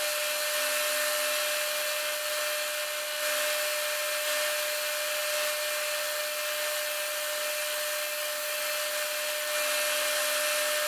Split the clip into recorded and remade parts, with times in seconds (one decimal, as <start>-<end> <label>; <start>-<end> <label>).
0.0-10.9 recorded